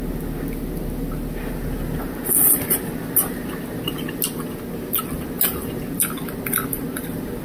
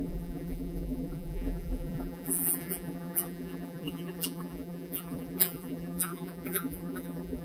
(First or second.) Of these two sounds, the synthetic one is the second